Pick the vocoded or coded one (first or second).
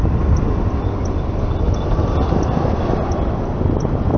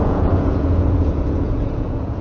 second